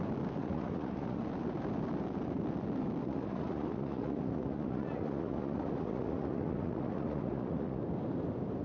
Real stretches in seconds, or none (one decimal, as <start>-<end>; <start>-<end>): 0.0-0.4; 1.2-3.0; 7.8-8.6